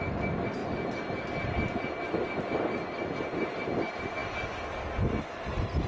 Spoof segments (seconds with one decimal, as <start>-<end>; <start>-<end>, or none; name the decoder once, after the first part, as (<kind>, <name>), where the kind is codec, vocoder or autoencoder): none